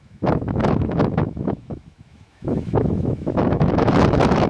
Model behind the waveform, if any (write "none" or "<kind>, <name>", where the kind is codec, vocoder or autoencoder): autoencoder, DAC-VAE